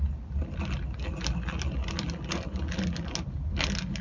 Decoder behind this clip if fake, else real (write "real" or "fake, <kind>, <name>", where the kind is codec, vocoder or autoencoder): real